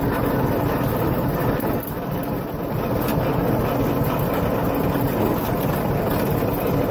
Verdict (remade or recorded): recorded